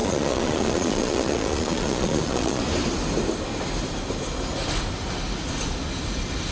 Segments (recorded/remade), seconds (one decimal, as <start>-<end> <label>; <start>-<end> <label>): 0.0-2.6 remade; 2.6-6.5 recorded